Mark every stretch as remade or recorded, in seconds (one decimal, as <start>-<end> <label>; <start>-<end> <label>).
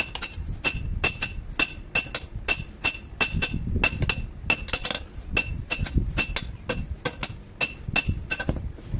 0.0-9.0 recorded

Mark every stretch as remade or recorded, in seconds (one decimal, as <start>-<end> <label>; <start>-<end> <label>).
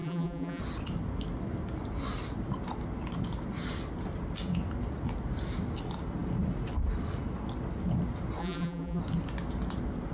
0.0-0.6 remade; 0.6-8.4 recorded; 8.4-9.0 remade; 9.0-10.1 recorded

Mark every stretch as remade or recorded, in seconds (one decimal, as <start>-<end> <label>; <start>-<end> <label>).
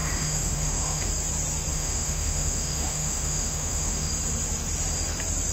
0.0-1.1 remade; 1.1-1.7 recorded; 1.7-4.1 remade; 4.1-5.5 recorded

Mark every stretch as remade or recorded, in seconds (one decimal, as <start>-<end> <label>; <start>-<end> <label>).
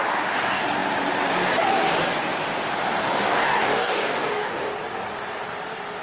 0.0-3.0 recorded; 3.0-4.7 remade; 4.7-6.0 recorded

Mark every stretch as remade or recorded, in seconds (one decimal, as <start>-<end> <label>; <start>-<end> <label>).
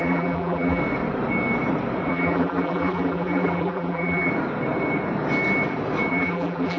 0.0-0.8 remade; 0.8-2.1 recorded; 2.1-4.3 remade; 4.3-6.1 recorded; 6.1-6.8 remade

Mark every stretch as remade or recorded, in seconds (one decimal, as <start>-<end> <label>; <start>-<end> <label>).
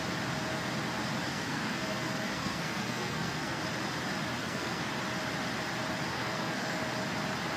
0.0-1.3 recorded; 1.3-3.6 remade; 3.6-4.4 recorded; 4.4-4.9 remade; 4.9-6.1 recorded; 6.1-6.8 remade; 6.8-7.6 recorded